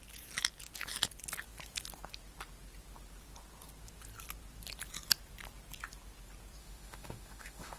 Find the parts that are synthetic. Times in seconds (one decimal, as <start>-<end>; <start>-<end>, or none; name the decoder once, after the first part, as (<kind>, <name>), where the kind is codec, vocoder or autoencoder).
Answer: 6.6-7.8 (autoencoder, DAC-VAE)